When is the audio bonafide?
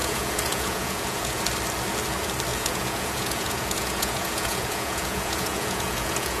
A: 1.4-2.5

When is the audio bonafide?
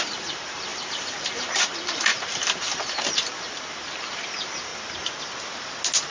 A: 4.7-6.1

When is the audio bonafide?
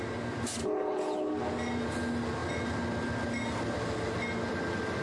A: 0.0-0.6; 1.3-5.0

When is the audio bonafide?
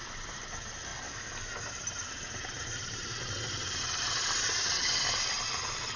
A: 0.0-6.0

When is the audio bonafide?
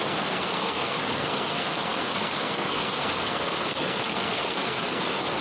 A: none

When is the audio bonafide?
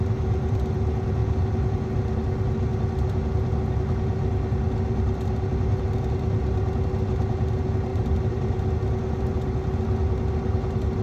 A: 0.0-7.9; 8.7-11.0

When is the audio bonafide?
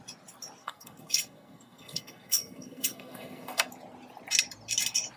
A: 0.0-0.6; 3.7-5.2